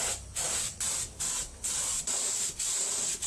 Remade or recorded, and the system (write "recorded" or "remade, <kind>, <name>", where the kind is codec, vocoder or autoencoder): remade, vocoder, BigVGAN v2